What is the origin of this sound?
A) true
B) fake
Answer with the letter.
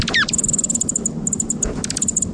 A